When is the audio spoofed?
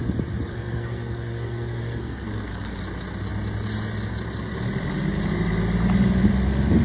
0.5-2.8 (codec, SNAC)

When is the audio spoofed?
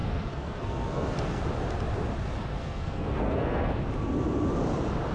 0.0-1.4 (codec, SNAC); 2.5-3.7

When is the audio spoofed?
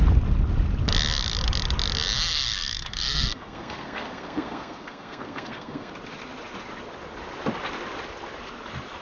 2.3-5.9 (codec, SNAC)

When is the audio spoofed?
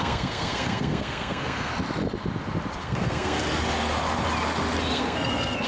0.0-1.7 (codec, SNAC); 2.8-3.4; 4.9-5.7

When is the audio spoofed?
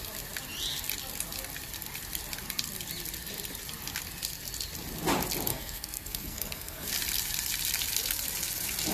5.5-6.9 (codec, SNAC)